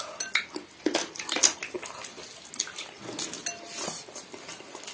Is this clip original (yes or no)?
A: yes